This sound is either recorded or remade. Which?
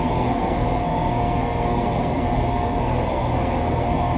remade